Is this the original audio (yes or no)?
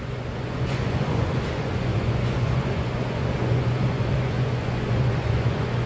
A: no